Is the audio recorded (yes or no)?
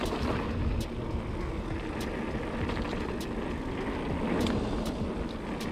yes